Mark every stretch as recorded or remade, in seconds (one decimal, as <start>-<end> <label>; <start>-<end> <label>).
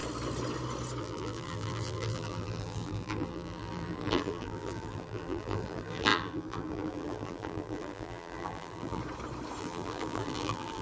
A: 0.0-1.0 recorded; 1.0-9.0 remade; 9.0-9.6 recorded; 9.6-10.8 remade